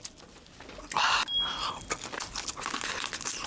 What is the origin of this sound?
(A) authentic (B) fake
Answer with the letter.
A